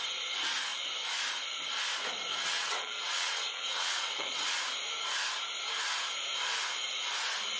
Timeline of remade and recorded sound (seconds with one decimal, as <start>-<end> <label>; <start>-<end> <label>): 0.0-2.3 recorded; 2.3-4.5 remade; 4.5-7.6 recorded